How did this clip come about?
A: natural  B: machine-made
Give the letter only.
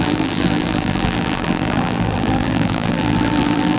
B